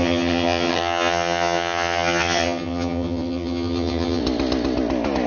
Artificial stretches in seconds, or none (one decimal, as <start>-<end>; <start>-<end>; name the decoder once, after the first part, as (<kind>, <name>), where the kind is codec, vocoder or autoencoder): 0.0-4.2 (vocoder, HiFi-GAN)